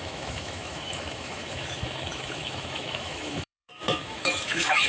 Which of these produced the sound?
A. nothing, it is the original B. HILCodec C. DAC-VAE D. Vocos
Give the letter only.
C